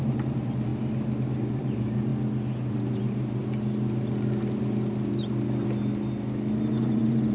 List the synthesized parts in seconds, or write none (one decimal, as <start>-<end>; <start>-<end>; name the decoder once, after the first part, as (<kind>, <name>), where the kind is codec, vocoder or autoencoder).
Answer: 0.0-0.7 (vocoder, BigVGAN v2); 1.3-2.1; 2.7-3.4; 6.8-7.3